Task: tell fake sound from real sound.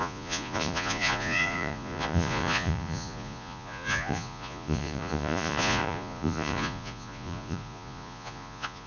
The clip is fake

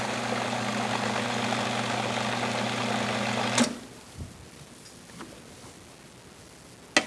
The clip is real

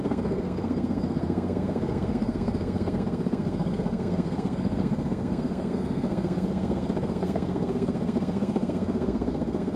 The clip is fake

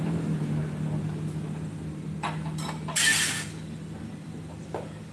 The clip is real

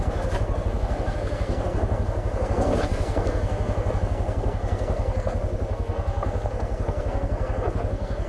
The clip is fake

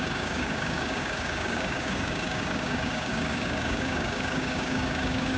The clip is fake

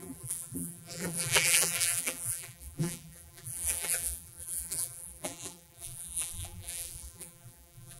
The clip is fake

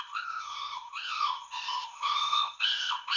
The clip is fake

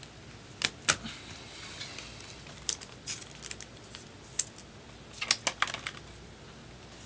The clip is real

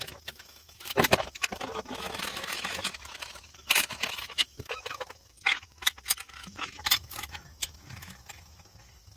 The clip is fake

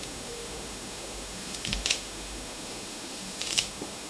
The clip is fake